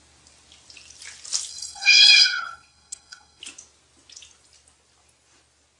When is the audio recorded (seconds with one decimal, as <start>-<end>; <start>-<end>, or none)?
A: 0.0-1.5; 3.4-5.8

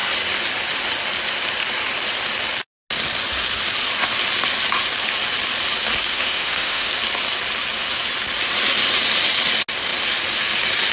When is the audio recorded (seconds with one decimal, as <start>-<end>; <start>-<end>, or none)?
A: 0.0-6.1; 6.9-10.9